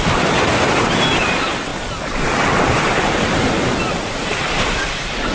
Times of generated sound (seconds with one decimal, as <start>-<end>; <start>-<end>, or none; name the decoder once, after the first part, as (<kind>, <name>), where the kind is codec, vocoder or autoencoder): 1.7-2.8 (vocoder, BigVGAN v2)